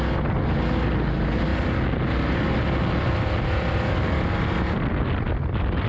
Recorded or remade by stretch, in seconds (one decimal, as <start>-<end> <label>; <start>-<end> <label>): 0.0-5.9 recorded